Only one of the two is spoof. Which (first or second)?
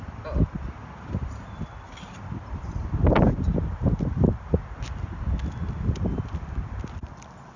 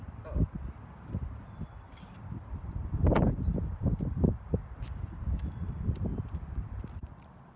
second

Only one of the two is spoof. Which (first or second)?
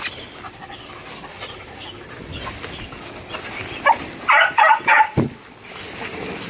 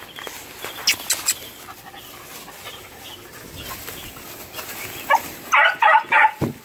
first